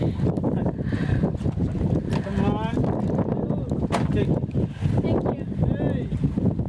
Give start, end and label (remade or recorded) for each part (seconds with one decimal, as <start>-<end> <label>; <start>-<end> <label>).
0.0-6.7 recorded